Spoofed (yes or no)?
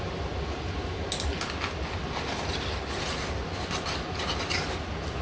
no